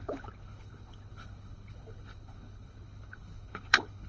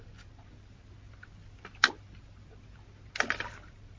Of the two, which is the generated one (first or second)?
first